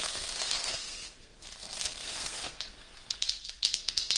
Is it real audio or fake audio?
fake